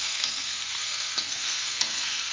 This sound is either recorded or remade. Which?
remade